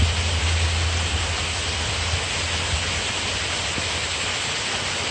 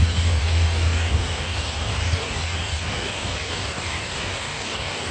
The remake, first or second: second